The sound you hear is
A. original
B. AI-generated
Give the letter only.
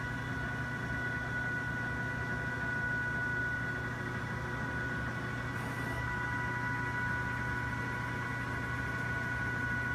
A